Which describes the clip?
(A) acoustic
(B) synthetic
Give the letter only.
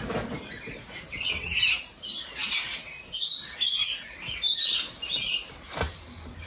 A